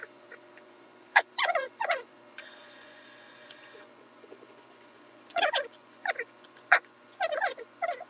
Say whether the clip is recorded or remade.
remade